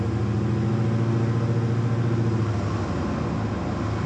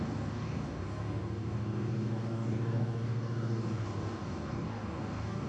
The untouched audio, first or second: first